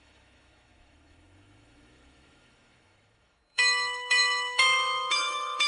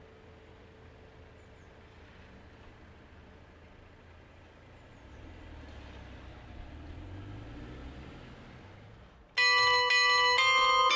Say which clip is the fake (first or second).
first